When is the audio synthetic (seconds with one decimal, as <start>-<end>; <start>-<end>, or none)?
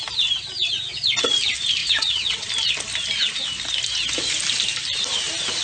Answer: 1.8-2.5